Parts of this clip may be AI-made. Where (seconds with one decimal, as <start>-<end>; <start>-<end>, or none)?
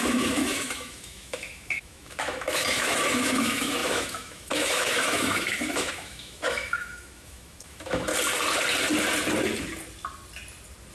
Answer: 0.0-8.1